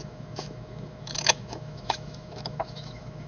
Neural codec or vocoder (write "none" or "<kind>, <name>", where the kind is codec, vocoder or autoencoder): autoencoder, DAC-VAE